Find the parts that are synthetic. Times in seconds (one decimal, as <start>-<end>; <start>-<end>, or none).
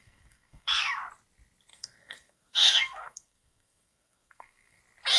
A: 0.0-0.9; 1.7-4.8